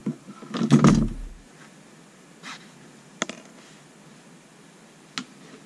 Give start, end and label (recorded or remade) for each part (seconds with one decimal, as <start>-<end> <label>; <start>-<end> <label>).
0.0-5.7 recorded

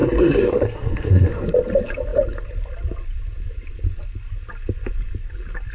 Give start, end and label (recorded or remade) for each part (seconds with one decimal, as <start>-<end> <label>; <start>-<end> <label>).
0.0-1.4 remade; 1.4-5.7 recorded